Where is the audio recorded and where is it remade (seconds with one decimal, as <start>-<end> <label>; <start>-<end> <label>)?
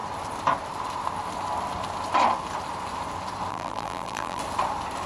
0.0-3.5 recorded; 3.5-4.4 remade; 4.4-5.1 recorded